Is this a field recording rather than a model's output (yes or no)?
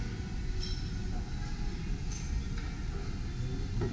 yes